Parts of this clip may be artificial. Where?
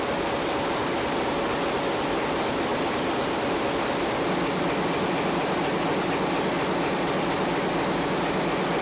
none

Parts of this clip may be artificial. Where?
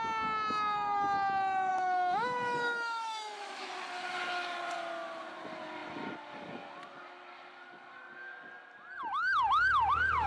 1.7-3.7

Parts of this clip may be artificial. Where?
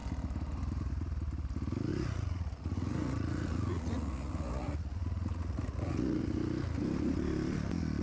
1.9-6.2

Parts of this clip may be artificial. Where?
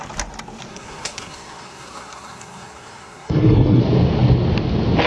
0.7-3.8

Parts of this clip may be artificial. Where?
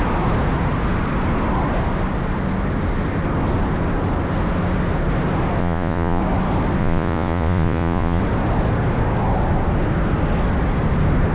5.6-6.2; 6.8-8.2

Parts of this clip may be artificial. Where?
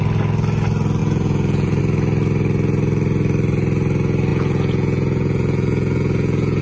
1.0-1.8; 4.3-6.6